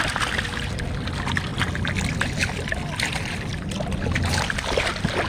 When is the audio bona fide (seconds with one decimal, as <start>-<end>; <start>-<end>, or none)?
0.0-5.3